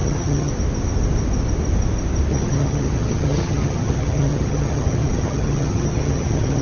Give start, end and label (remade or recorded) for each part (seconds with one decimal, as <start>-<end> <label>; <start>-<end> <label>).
0.0-0.5 remade; 0.5-2.3 recorded; 2.3-6.6 remade